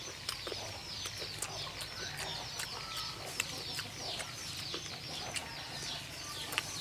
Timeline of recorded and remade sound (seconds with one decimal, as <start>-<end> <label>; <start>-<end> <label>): 0.0-6.8 recorded